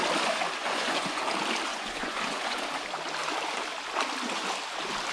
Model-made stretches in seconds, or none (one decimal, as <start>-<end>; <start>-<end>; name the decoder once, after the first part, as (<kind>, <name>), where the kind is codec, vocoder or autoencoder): 0.6-1.2 (vocoder, Vocos); 1.7-2.6